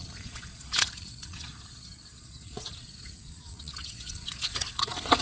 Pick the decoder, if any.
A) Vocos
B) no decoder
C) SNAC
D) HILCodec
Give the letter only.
A